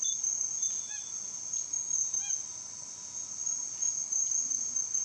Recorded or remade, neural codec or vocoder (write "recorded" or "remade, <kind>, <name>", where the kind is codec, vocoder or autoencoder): recorded